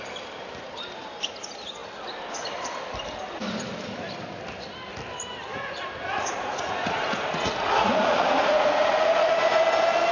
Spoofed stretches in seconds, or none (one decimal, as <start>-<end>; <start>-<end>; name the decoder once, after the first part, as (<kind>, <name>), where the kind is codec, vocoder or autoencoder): 5.5-9.6 (vocoder, Vocos)